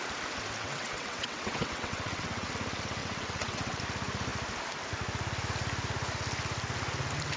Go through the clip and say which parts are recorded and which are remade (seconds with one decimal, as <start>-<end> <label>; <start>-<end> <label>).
0.0-0.6 recorded; 0.6-2.5 remade; 2.5-3.0 recorded; 3.0-3.8 remade; 3.8-7.4 recorded

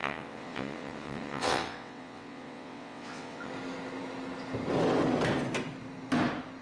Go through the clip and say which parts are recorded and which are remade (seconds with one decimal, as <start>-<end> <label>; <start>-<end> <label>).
0.0-3.5 remade; 3.5-6.6 recorded

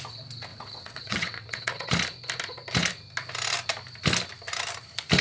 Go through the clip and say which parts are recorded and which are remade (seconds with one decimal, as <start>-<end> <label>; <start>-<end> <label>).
0.0-0.5 recorded; 0.5-1.9 remade; 1.9-5.2 recorded

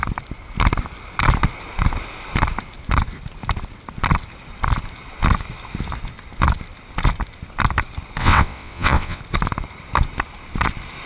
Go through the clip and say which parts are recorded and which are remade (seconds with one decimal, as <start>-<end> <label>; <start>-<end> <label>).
0.0-8.2 recorded; 8.2-9.2 remade; 9.2-11.1 recorded